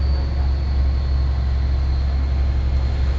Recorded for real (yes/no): yes